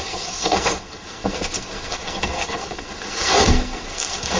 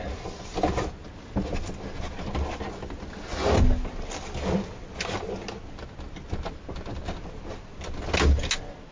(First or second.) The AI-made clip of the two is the first